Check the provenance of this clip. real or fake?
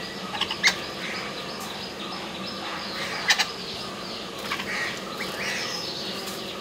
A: fake